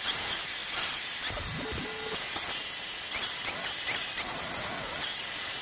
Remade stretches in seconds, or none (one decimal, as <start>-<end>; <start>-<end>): none